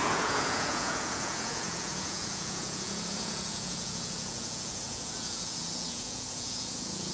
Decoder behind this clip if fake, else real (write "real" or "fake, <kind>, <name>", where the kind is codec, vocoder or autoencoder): fake, vocoder, Vocos